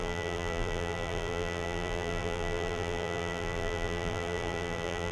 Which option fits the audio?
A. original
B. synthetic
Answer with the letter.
B